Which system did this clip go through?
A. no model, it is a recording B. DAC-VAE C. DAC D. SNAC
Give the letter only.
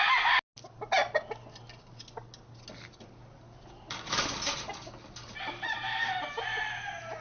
A